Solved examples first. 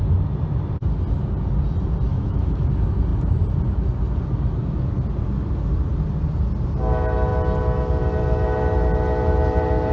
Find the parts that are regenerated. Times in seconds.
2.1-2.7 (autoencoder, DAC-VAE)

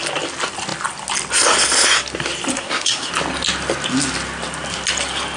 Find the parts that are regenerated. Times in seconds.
2.5-3.1 (codec, SNAC)

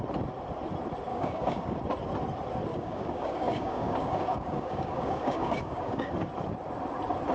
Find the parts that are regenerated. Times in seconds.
1.1-1.8 (codec, DAC); 2.7-6.1

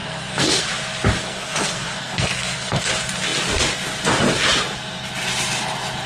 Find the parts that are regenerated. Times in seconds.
0.0-0.7 (codec, SNAC); 1.2-2.9

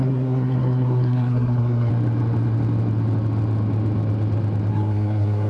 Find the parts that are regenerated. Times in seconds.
0.0-1.9 (codec, SNAC); 4.7-5.5